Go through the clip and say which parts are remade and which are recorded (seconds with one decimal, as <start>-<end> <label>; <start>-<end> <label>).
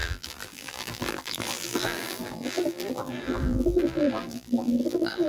0.0-5.3 remade